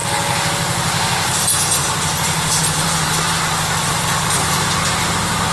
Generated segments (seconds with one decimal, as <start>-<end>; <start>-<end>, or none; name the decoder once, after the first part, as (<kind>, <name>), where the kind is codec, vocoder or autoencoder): 1.8-5.1 (vocoder, BigVGAN v2)

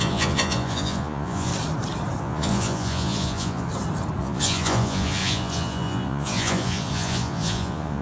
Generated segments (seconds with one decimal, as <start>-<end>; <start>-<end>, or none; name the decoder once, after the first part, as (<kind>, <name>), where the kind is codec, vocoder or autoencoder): 0.0-1.5 (vocoder, Vocos); 2.2-3.7; 4.2-8.0

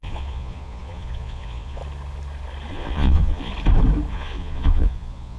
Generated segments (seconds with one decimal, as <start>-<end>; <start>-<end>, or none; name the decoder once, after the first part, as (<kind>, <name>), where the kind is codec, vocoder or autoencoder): 0.0-1.8 (vocoder, Vocos); 2.7-3.5; 4.1-5.4

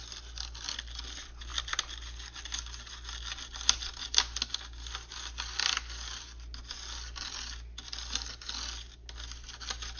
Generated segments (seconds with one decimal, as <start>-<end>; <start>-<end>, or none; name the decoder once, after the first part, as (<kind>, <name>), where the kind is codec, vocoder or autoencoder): none

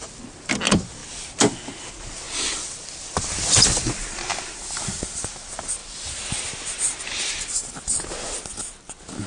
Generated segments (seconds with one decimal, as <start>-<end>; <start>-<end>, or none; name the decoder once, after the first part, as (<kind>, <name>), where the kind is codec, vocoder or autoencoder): none

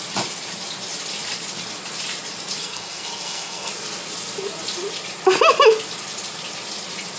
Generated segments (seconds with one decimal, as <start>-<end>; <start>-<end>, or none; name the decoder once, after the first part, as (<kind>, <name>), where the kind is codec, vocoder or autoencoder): 2.6-3.7 (codec, SNAC)

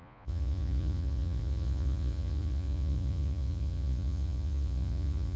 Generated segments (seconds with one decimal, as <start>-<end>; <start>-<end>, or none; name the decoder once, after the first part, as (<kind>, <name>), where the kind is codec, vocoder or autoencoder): 0.0-5.4 (vocoder, Vocos)

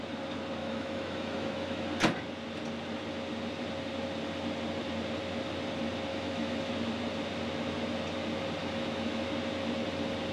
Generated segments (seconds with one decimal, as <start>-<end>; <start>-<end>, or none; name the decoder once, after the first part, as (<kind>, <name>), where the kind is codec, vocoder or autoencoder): 0.6-1.8 (autoencoder, DAC-VAE); 6.1-6.7; 8.6-9.3